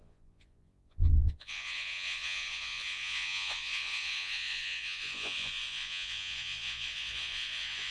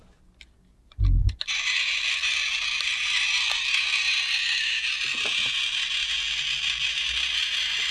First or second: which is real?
second